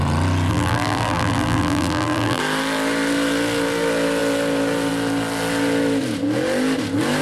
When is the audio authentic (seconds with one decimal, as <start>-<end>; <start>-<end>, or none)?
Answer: 0.0-0.5; 2.4-7.2